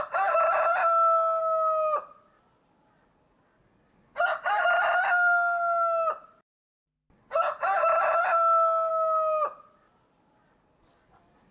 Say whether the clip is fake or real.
real